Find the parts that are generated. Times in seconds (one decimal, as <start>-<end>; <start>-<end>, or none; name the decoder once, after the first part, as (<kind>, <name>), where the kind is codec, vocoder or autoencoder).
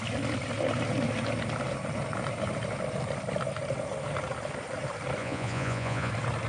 5.2-6.1 (vocoder, Vocos)